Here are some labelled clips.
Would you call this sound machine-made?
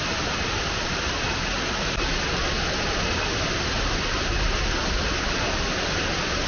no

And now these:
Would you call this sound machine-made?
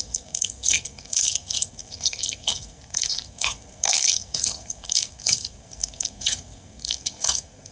yes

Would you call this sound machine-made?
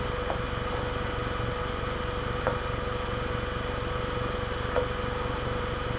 no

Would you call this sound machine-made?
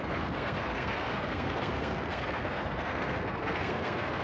yes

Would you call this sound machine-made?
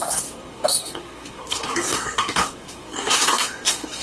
yes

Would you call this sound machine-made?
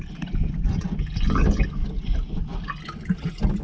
no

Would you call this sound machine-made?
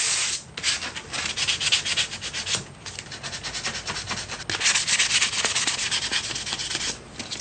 no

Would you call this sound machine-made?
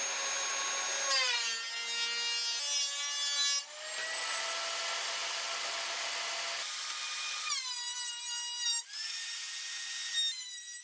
no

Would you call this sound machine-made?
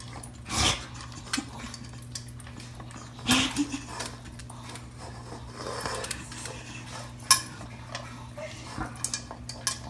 no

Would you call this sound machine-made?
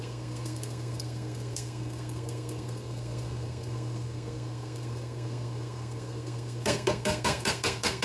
yes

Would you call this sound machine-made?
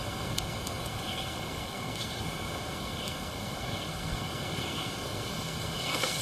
yes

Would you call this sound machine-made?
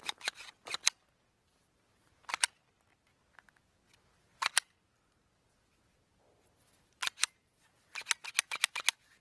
no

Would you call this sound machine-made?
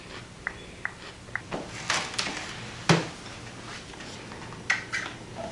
no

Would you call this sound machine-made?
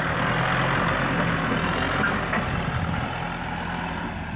no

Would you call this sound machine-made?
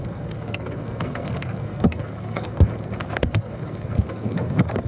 yes